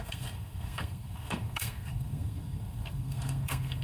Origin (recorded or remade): remade